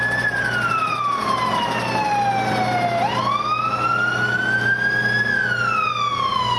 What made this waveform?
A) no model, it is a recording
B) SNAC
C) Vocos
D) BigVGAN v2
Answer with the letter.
A